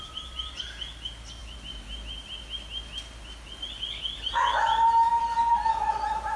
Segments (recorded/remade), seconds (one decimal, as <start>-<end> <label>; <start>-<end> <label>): 0.0-6.4 recorded